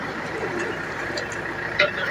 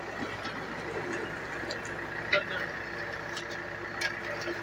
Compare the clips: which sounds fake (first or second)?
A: first